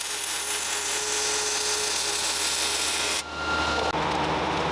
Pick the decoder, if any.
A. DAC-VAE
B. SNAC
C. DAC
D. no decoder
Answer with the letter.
D